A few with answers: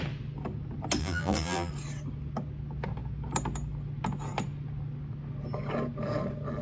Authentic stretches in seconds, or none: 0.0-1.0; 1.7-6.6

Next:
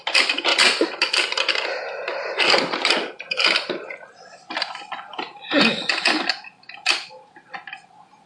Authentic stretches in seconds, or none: 0.0-8.3

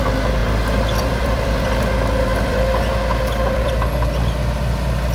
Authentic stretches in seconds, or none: 0.0-0.4; 1.8-2.3; 3.7-5.1

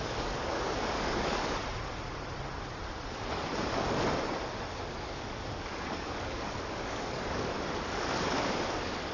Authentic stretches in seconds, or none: 1.6-4.8

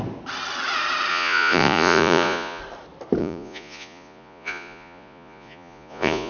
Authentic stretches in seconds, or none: 0.0-1.1; 2.6-3.2

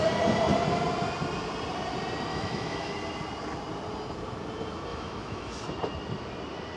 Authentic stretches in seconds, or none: 0.0-2.3; 2.9-4.9; 5.6-6.8

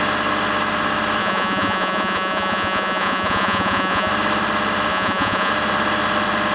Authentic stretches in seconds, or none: 0.0-1.2; 4.1-4.9; 5.5-6.5

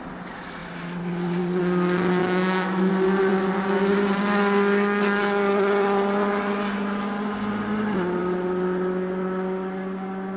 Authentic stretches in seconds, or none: 0.0-2.2; 2.9-10.4